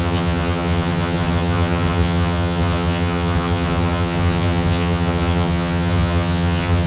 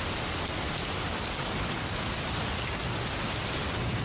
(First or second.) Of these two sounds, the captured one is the second